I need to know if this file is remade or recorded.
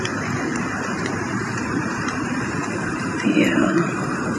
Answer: remade